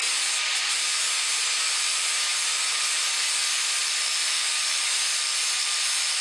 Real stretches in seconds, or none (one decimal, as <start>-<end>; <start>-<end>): 0.0-6.2